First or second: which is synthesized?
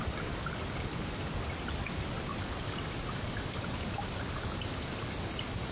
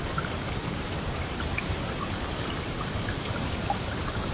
second